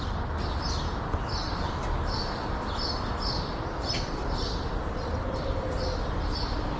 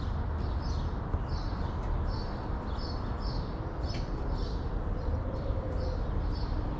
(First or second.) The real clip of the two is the second